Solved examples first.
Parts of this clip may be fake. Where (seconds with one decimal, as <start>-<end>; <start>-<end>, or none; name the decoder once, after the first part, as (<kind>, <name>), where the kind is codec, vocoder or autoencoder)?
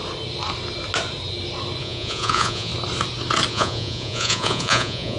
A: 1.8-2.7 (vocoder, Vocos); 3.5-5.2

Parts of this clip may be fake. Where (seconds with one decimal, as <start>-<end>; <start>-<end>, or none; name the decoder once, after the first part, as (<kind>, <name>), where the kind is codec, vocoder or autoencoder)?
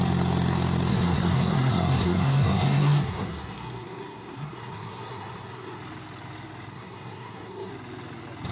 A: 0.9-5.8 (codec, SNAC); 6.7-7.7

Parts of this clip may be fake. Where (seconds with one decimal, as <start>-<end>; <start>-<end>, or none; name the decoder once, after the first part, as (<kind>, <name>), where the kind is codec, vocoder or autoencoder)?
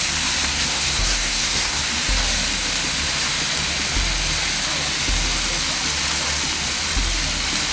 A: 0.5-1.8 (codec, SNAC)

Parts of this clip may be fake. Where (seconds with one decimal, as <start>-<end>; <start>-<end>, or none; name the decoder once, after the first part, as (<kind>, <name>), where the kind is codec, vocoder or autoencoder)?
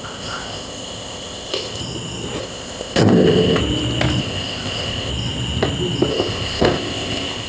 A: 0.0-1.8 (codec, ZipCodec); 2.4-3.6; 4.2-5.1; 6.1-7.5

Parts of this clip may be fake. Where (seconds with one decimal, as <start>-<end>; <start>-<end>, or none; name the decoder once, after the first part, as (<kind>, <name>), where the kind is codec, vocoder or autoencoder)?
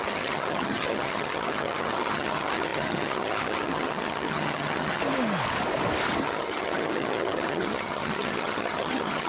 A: 0.0-5.0 (vocoder, HiFi-GAN); 6.2-9.3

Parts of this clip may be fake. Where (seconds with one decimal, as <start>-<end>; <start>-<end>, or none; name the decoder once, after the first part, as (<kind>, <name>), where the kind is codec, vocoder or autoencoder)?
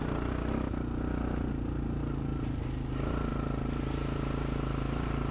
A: none